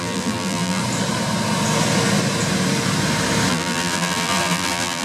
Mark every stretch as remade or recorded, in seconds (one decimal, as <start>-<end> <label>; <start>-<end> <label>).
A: 0.0-0.8 remade; 0.8-3.5 recorded; 3.5-5.0 remade

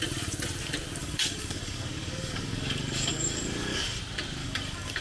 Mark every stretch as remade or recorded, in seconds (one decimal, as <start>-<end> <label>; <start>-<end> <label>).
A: 0.0-1.0 recorded; 1.0-4.0 remade; 4.0-4.4 recorded; 4.4-5.0 remade